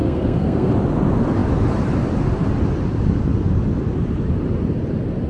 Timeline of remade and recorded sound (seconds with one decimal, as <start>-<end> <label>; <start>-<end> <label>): 0.0-0.7 remade; 0.7-5.3 recorded